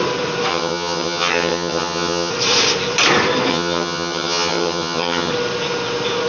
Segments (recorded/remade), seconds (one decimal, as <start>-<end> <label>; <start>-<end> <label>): 0.0-0.5 recorded; 0.5-2.3 remade; 2.3-3.5 recorded; 3.5-5.3 remade; 5.3-6.3 recorded